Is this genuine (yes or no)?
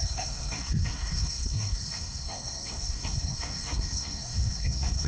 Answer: no